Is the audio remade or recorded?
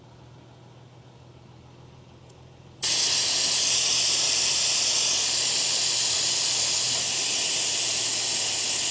recorded